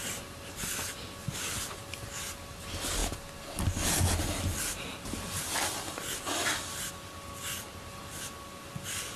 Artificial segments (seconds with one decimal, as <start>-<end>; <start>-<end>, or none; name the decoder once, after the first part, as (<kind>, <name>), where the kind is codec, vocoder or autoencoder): none